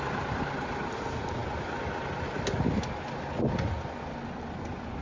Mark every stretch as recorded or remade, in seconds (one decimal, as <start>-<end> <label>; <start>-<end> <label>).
0.0-5.0 recorded

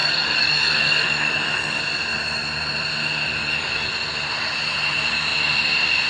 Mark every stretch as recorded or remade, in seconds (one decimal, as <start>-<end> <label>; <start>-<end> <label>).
0.0-1.8 remade; 1.8-3.4 recorded; 3.4-3.9 remade; 3.9-6.1 recorded

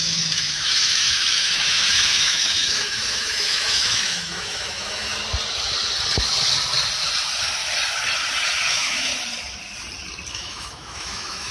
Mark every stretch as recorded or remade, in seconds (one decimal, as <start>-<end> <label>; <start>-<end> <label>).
0.0-5.1 remade; 5.1-8.7 recorded; 8.7-9.1 remade; 9.1-10.3 recorded; 10.3-11.5 remade

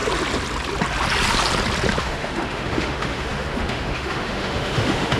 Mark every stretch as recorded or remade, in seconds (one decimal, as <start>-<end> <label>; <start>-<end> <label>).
0.0-2.0 recorded; 2.0-5.2 remade